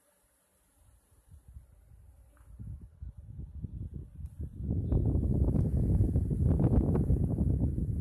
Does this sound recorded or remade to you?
recorded